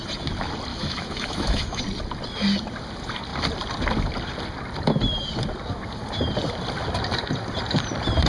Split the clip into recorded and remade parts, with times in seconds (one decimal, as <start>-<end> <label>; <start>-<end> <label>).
0.0-0.7 recorded; 0.7-1.8 remade; 1.8-8.3 recorded